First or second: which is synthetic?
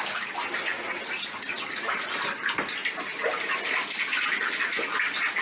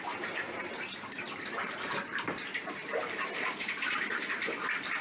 second